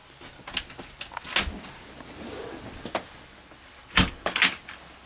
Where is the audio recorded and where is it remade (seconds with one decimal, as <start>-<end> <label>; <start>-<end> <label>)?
0.0-3.8 recorded; 3.8-4.6 remade; 4.6-5.1 recorded